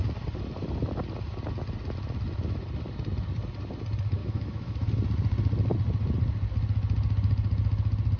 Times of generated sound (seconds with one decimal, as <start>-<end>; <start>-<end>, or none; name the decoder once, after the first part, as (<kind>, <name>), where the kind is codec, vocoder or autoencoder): 4.2-4.9 (autoencoder, DAC-VAE)